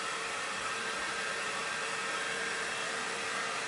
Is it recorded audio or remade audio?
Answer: remade